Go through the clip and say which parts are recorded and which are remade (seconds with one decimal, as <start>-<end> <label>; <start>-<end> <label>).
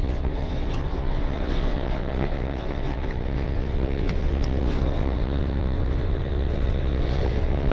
0.0-7.7 remade